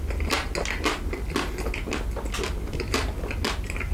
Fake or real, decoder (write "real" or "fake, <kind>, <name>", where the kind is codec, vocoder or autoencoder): real